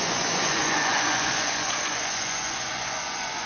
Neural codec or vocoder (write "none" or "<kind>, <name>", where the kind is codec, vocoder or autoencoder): vocoder, Vocos